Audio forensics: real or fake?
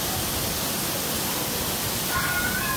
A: real